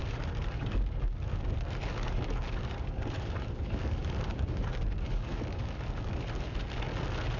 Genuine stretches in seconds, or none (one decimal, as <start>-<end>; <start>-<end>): 6.9-7.4